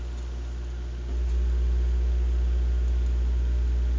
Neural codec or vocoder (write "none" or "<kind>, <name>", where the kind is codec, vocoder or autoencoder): none